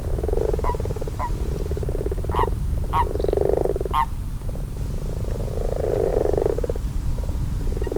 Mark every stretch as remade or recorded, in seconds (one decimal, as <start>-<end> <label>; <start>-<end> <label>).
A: 0.0-0.5 recorded; 0.5-3.6 remade; 3.6-6.1 recorded; 6.1-8.0 remade